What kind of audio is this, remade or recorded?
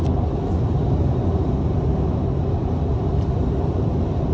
recorded